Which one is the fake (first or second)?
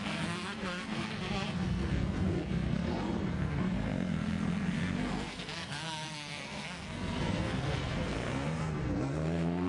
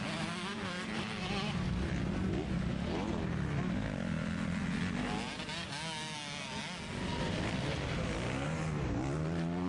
first